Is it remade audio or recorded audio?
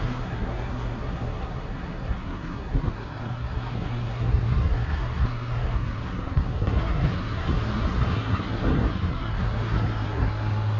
remade